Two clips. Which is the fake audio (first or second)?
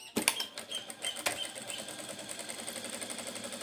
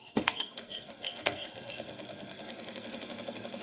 second